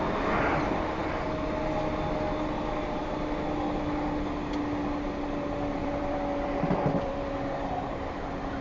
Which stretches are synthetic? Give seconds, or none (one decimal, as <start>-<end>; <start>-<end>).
5.8-7.8